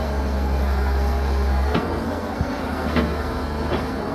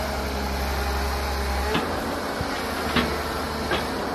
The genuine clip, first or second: second